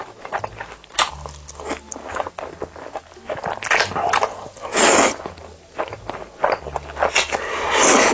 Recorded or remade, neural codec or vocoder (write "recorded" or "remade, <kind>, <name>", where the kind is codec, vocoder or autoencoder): recorded